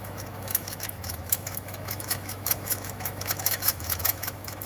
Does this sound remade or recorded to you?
remade